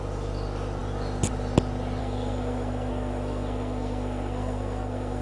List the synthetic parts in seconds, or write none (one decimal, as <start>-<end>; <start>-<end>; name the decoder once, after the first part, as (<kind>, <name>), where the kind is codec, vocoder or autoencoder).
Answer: 2.0-5.2 (codec, SNAC)